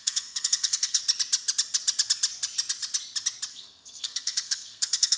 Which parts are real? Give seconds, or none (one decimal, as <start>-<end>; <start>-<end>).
1.0-3.5

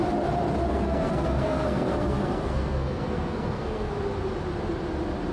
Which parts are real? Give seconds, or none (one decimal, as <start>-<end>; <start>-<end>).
0.0-0.7; 3.9-5.3

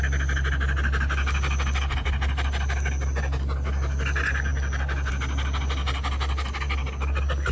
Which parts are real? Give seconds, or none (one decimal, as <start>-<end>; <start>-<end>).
0.0-7.5

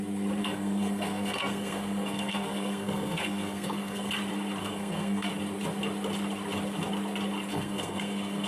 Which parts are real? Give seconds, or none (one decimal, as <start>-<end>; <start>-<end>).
0.0-0.4; 4.1-4.6; 5.3-7.5

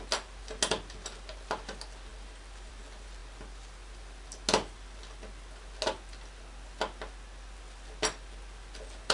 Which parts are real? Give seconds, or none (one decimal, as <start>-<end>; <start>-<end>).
0.0-9.1

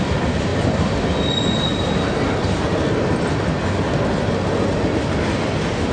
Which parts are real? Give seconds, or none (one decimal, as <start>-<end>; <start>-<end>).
0.0-5.9

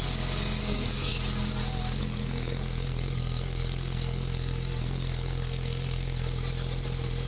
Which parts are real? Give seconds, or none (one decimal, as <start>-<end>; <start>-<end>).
0.0-0.6; 1.1-2.0; 6.3-7.3

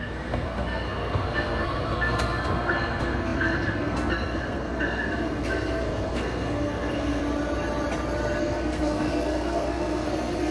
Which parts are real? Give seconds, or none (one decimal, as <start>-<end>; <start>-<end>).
7.2-8.4